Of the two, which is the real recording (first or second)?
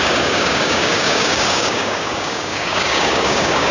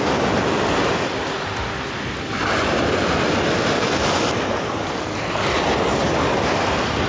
second